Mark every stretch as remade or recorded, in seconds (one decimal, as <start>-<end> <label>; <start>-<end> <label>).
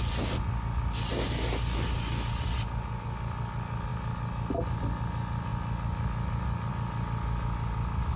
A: 0.0-8.2 recorded